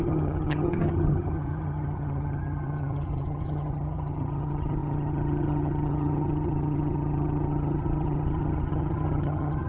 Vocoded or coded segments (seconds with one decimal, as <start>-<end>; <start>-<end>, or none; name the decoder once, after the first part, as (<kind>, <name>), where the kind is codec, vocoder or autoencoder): 0.0-9.7 (vocoder, HiFi-GAN)